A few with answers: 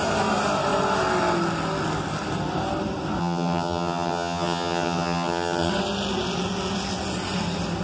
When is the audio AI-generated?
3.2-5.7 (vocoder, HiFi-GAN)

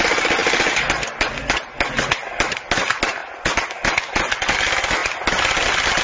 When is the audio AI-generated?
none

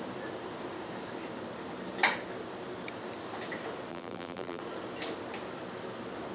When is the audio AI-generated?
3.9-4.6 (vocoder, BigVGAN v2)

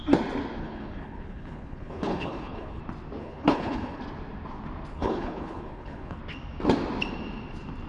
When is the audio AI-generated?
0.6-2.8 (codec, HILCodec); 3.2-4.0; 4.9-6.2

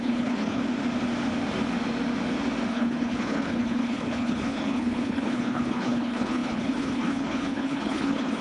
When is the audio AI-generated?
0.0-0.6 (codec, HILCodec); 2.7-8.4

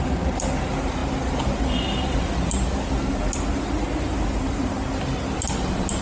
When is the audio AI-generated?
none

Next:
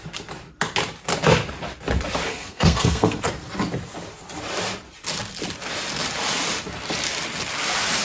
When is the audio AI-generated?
2.3-3.2 (codec, SNAC)

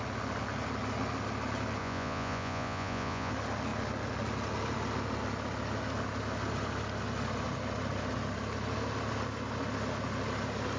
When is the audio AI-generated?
1.8-3.3 (vocoder, Vocos)